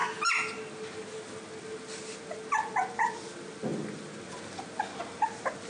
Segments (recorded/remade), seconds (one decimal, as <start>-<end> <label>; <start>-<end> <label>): 0.0-5.7 recorded